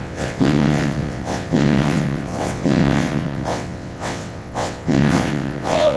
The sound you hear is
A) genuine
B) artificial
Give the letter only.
B